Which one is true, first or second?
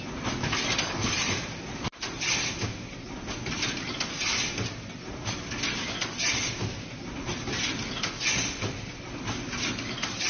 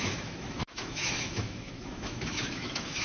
first